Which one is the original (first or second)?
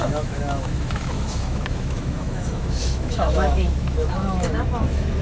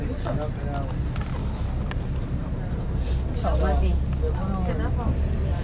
second